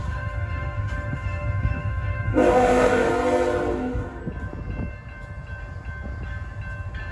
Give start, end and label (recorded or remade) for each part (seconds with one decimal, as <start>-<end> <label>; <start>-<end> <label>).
0.0-3.1 remade; 3.1-3.7 recorded; 3.7-4.2 remade; 4.2-7.1 recorded